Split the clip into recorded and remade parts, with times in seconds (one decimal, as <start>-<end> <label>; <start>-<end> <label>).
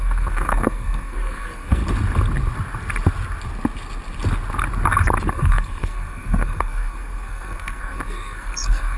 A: 0.0-1.8 remade; 1.8-5.3 recorded; 5.3-9.0 remade